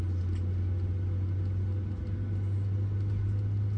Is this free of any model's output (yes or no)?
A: yes